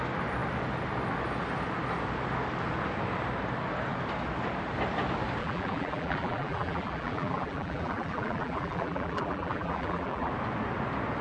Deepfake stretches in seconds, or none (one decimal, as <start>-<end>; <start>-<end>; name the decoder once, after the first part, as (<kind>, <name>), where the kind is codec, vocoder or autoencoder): 5.4-10.3 (vocoder, BigVGAN v2)